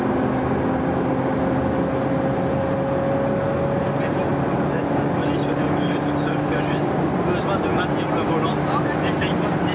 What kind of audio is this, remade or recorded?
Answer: recorded